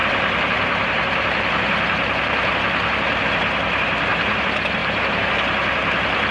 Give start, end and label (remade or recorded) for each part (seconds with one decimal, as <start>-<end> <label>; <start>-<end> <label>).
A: 0.0-6.3 remade